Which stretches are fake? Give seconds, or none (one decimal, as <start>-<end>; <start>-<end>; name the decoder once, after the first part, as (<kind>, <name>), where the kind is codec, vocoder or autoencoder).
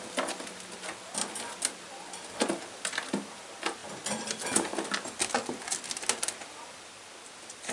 none